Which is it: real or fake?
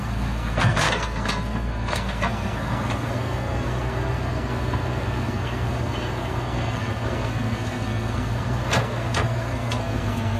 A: fake